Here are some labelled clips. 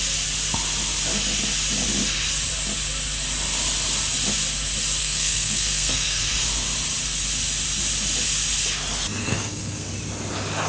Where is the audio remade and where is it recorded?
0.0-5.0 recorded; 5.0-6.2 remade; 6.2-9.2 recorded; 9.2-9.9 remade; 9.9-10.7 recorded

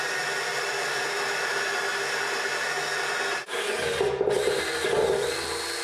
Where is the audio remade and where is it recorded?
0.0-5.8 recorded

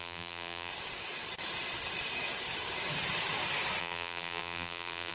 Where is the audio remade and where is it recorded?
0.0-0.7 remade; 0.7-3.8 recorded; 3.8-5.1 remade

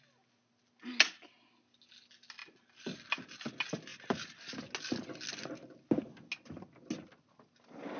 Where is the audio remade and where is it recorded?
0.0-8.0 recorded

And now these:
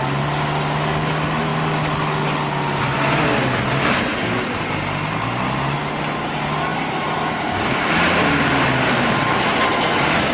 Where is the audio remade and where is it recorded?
0.0-6.7 recorded; 6.7-7.8 remade; 7.8-10.3 recorded